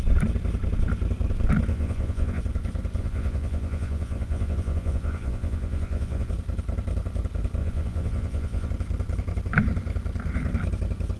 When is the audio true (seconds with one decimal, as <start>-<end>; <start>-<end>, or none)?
0.0-1.7; 2.4-3.0; 6.3-7.6; 8.7-11.2